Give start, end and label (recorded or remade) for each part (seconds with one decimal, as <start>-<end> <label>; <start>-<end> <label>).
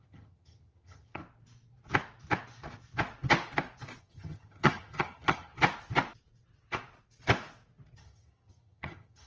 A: 0.0-1.2 remade; 1.2-4.0 recorded; 4.0-5.5 remade; 5.5-8.0 recorded; 8.0-9.3 remade